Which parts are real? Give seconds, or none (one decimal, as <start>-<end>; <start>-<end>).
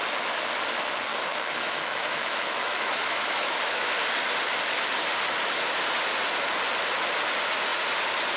0.0-1.1; 4.0-8.4